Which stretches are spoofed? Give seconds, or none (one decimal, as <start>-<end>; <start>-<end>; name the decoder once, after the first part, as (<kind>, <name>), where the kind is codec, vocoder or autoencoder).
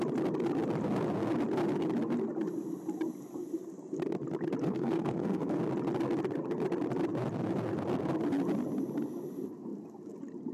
4.6-5.6 (codec, SNAC)